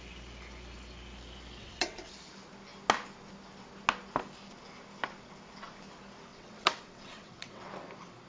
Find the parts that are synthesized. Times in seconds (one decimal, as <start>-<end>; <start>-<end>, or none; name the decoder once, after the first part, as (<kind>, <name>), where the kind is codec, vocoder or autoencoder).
1.6-2.1 (vocoder, WaveNeXt); 6.3-7.7